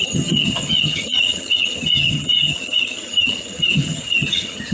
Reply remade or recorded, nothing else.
remade